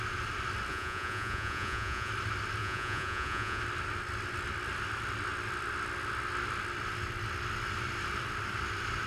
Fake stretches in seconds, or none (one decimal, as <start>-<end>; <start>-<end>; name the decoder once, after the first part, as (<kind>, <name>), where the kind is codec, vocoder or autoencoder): 0.7-2.1 (vocoder, Vocos); 2.6-3.6